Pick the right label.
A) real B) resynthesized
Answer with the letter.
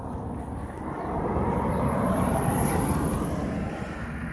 A